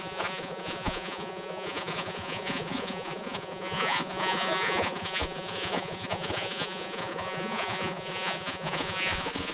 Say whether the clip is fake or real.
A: fake